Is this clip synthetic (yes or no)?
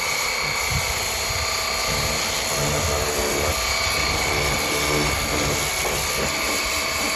no